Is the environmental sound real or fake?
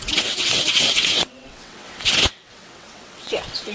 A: fake